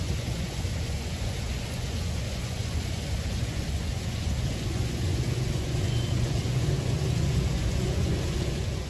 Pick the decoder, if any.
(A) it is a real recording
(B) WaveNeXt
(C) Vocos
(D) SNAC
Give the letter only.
C